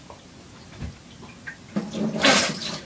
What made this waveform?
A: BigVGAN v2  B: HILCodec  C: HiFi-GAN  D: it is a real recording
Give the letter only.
D